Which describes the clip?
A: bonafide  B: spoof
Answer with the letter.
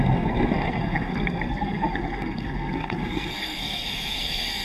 B